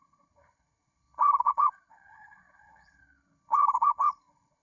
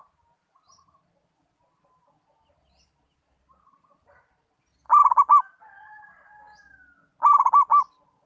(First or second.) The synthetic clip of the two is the first